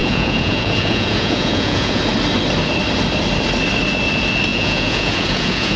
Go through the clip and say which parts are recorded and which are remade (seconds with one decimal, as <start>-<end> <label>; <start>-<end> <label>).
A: 0.0-2.0 remade; 2.0-4.5 recorded; 4.5-5.8 remade